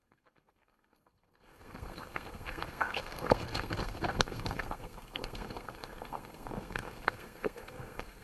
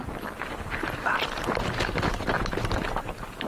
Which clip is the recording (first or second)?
second